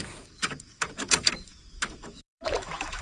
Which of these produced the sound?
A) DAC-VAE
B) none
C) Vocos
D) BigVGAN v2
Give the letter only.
A